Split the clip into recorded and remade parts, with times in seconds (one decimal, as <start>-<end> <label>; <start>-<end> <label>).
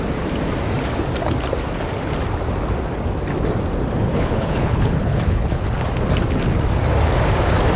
0.0-4.1 recorded; 4.1-5.6 remade; 5.6-7.8 recorded